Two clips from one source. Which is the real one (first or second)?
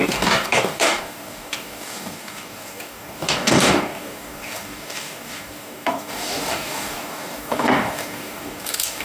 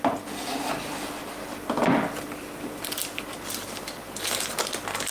second